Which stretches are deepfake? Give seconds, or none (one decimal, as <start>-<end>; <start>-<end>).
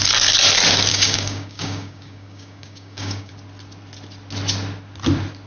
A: 0.9-3.3